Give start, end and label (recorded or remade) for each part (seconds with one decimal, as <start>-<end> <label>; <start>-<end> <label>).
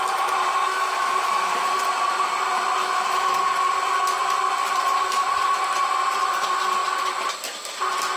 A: 0.0-0.6 recorded; 0.6-1.8 remade; 1.8-2.8 recorded; 2.8-3.4 remade; 3.4-8.2 recorded